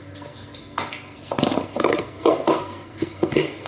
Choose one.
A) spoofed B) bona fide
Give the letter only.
A